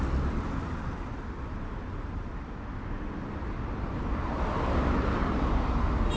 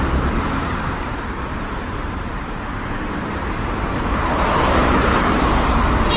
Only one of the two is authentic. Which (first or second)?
first